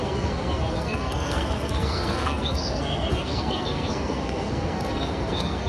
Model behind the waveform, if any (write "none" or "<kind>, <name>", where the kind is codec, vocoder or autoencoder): codec, SNAC